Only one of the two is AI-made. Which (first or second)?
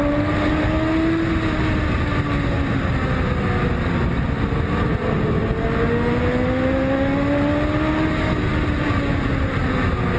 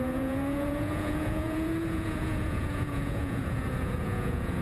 second